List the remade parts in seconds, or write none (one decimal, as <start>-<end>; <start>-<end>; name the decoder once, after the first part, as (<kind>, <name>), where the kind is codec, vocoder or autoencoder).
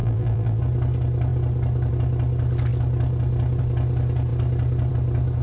0.0-0.6 (vocoder, BigVGAN v2)